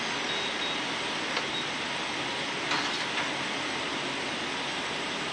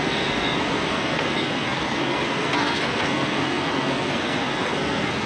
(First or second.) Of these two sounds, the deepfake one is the second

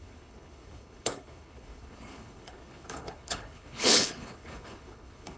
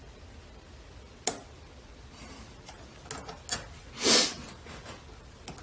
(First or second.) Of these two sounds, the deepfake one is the first